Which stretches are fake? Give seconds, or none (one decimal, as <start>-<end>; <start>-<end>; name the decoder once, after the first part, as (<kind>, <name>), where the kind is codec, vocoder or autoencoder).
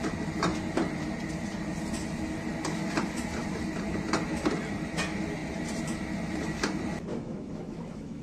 7.1-8.2 (autoencoder, DAC-VAE)